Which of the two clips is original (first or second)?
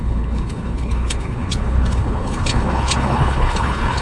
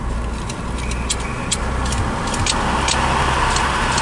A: second